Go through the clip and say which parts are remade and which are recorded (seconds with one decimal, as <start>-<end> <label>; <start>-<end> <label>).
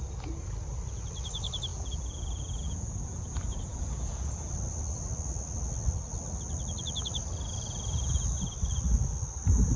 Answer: 0.0-1.7 recorded; 1.7-4.5 remade; 4.5-9.8 recorded